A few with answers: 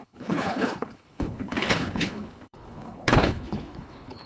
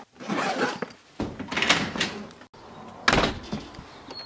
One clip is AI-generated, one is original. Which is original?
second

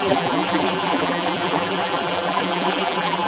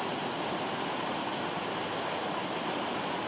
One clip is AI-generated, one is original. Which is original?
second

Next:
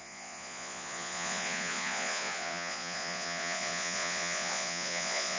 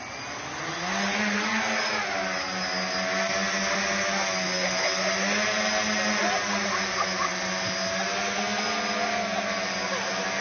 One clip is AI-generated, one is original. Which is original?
second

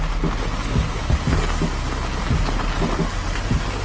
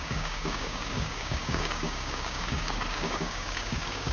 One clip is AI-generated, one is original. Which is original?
first